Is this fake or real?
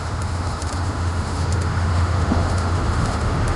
fake